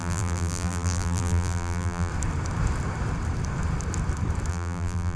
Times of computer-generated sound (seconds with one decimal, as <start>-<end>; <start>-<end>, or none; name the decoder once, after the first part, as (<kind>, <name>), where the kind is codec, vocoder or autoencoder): 0.0-2.1 (vocoder, BigVGAN v2); 4.5-5.2